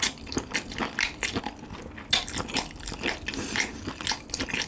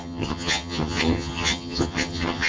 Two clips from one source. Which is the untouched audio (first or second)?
first